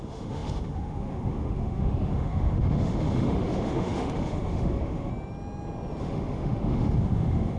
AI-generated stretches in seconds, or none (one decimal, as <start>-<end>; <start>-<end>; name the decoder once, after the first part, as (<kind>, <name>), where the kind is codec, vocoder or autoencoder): 0.0-5.1 (autoencoder, DAC-VAE); 6.0-7.6